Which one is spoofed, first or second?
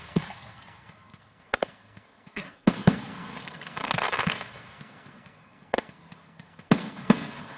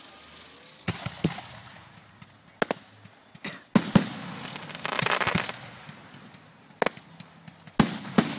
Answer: first